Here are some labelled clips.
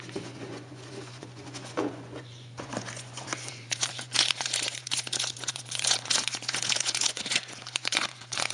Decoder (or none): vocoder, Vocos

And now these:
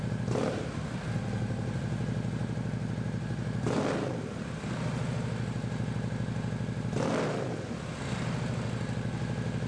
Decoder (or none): vocoder, BigVGAN v2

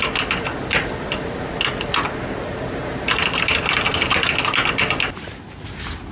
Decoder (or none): none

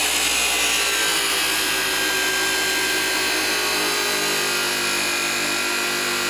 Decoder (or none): none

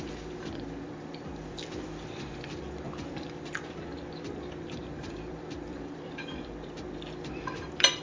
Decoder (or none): vocoder, BigVGAN v2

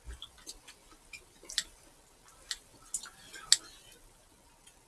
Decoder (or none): none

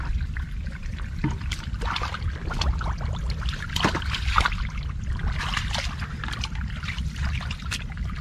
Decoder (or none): none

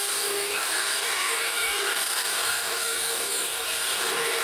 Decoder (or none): codec, DAC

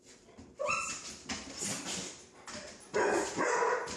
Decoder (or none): vocoder, BigVGAN v2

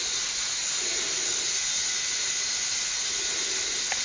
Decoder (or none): none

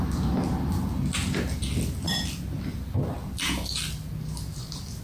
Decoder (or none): none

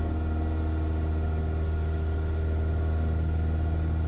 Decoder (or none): none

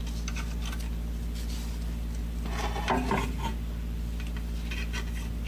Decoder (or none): vocoder, BigVGAN v2